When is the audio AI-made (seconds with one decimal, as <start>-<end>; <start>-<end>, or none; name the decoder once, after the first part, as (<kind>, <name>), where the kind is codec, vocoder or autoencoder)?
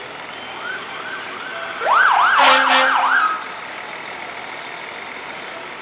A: none